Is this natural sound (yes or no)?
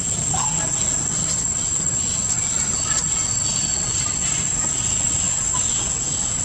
yes